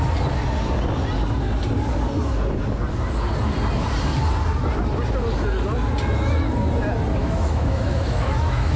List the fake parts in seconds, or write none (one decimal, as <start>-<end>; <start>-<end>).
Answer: 7.2-8.8